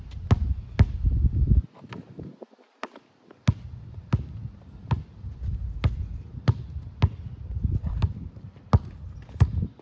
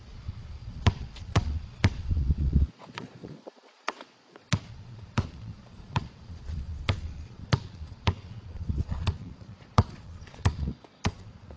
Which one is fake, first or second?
second